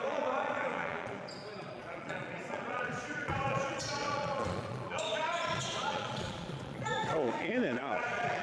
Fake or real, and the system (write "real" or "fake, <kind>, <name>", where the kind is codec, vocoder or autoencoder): fake, vocoder, Vocos